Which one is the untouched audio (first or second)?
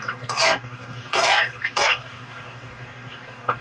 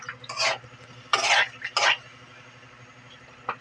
second